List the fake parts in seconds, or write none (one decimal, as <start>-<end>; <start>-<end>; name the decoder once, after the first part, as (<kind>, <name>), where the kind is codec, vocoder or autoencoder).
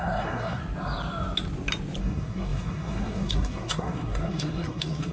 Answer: 0.0-0.6 (codec, SNAC); 2.0-5.1